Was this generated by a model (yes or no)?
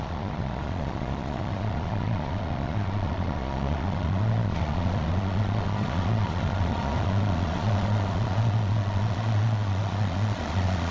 yes